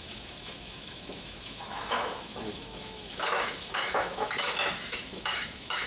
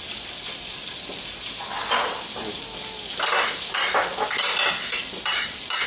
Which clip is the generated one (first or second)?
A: first